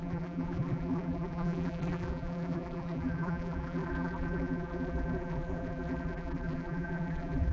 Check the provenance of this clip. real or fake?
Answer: fake